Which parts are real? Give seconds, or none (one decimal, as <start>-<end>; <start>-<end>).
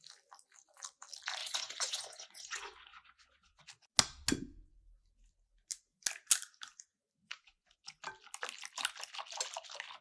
0.0-1.4; 3.6-7.2; 8.0-10.0